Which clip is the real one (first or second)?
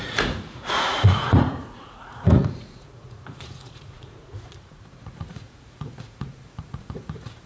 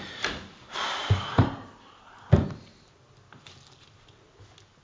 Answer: second